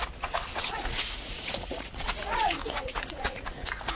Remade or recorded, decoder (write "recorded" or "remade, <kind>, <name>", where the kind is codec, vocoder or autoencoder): remade, vocoder, Vocos